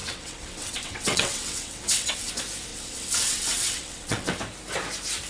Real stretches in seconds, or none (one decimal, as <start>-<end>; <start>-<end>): 2.3-2.7; 4.3-5.3